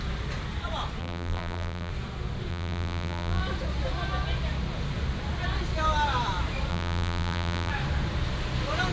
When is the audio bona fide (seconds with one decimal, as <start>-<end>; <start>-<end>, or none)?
0.0-1.0; 1.9-2.5; 3.4-6.7; 7.7-8.9